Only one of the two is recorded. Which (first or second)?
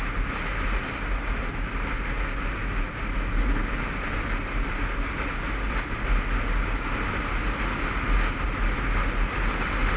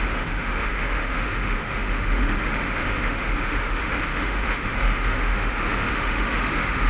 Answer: first